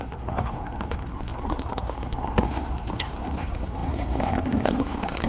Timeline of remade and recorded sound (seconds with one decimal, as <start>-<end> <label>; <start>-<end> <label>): 0.0-5.3 remade